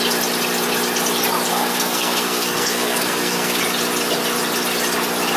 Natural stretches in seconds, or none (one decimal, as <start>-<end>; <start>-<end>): 0.0-1.5; 3.6-5.4